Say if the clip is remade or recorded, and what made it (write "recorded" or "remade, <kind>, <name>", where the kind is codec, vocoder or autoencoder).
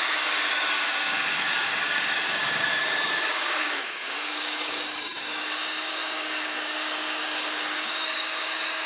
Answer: remade, codec, DAC